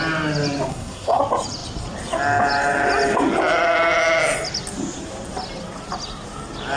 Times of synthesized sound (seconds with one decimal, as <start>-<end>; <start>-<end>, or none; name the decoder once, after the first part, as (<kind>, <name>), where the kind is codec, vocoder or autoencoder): 0.7-1.2 (codec, SNAC)